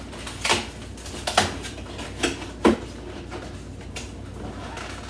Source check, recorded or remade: recorded